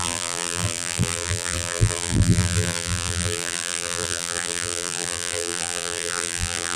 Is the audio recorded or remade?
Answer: remade